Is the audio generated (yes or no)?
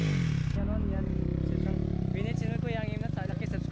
no